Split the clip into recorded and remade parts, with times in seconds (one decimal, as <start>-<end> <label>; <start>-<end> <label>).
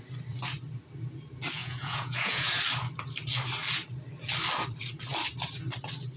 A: 0.0-1.6 recorded; 1.6-2.6 remade; 2.6-6.2 recorded